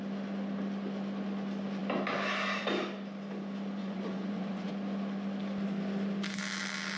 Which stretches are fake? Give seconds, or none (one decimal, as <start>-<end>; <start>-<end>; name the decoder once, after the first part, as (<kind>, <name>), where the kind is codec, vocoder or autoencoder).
3.8-4.7 (vocoder, Vocos)